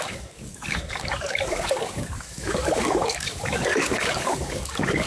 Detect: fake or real fake